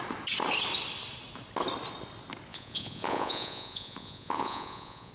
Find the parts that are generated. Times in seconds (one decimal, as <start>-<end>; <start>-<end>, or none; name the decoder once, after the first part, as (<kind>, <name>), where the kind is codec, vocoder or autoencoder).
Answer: 2.5-5.1 (vocoder, Vocos)